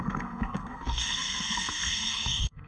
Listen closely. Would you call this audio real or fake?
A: fake